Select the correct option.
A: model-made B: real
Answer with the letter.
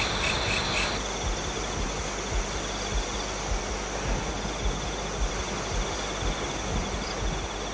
B